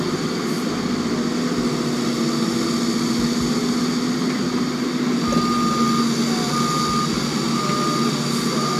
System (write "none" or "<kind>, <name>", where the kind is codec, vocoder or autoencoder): none